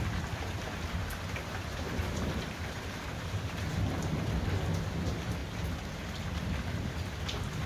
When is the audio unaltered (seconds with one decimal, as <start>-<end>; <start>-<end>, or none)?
0.0-1.0; 3.8-7.7